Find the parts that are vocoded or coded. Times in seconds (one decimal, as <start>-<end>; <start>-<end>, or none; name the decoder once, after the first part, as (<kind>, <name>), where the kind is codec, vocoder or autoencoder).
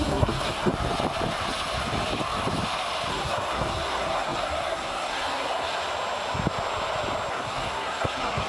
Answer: 0.0-0.7 (codec, SNAC); 3.1-5.8; 7.3-8.5